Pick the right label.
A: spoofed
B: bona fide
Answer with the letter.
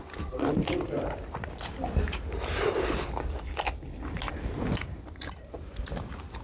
B